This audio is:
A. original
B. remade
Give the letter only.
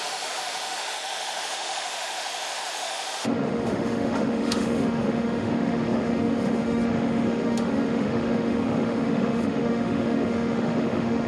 B